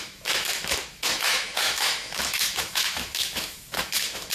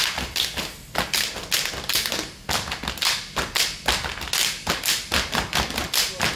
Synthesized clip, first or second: first